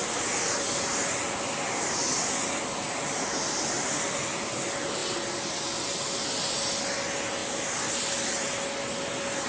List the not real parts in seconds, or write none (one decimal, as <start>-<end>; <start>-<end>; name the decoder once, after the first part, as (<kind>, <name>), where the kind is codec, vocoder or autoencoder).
0.0-2.2 (vocoder, BigVGAN v2)